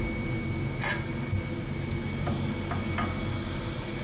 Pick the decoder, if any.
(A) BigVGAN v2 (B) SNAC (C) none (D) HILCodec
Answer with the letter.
C